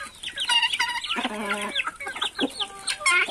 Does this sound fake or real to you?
real